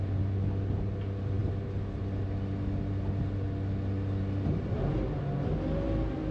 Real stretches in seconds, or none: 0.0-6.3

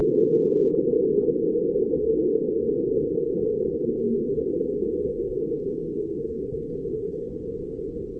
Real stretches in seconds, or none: 0.0-1.9; 7.3-8.2

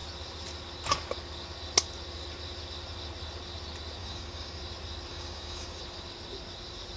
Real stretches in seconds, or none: 0.0-4.0; 4.6-5.1; 5.8-7.0

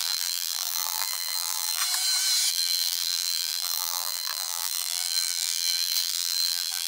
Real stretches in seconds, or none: 1.8-2.5

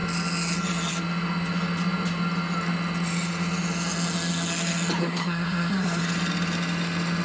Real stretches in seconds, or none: 0.0-5.0; 6.0-7.2

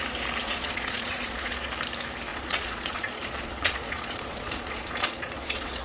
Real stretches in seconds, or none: 0.0-0.4; 1.7-2.3